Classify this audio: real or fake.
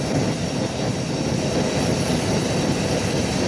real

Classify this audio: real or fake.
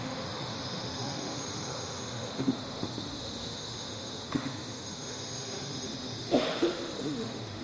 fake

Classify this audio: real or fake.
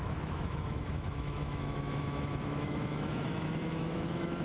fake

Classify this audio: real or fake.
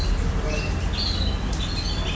real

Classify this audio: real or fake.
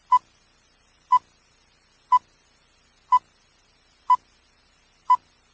real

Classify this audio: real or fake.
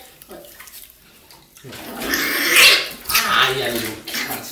real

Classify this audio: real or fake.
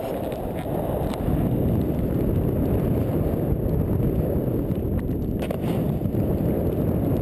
real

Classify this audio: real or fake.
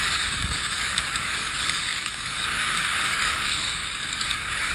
fake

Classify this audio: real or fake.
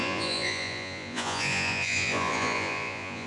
fake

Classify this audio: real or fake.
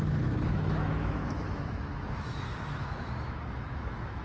fake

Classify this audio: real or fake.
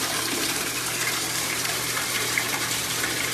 fake